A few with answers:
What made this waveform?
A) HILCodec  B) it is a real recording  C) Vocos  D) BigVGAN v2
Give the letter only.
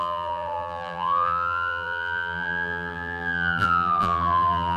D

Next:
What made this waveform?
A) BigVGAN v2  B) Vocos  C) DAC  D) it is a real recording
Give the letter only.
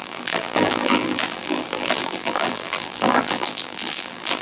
A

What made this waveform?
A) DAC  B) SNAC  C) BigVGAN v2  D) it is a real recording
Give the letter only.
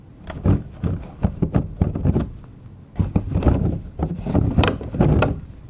C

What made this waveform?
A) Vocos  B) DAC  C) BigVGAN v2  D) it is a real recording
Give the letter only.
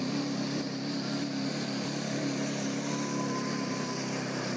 C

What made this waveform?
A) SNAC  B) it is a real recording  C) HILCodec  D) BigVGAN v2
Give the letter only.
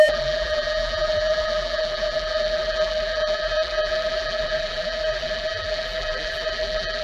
D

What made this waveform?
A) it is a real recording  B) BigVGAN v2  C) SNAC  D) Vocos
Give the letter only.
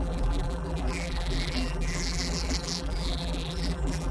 B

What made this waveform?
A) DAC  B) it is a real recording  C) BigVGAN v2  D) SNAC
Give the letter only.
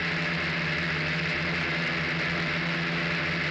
B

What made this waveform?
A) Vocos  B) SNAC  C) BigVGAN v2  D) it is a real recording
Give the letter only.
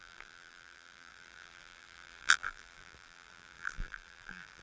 C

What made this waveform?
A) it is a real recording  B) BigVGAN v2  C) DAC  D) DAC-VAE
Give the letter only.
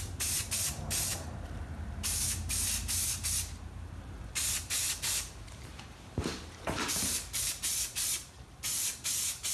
B